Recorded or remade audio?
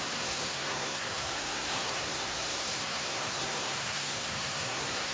remade